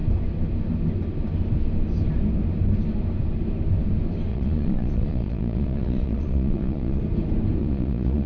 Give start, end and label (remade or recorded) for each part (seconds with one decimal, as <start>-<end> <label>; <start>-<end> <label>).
0.0-4.3 recorded; 4.3-7.0 remade; 7.0-7.6 recorded; 7.6-8.3 remade